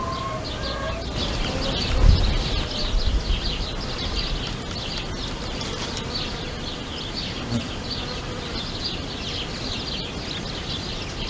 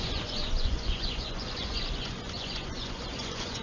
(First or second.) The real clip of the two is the first